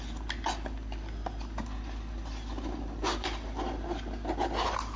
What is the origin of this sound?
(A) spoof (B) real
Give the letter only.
B